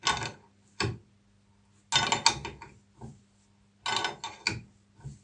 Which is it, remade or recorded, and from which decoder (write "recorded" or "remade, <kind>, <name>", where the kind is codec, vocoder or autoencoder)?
recorded